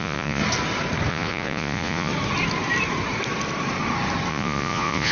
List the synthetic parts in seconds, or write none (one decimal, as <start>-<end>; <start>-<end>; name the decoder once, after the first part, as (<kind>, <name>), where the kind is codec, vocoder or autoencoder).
0.0-0.4 (vocoder, Vocos); 1.1-2.1; 4.3-5.1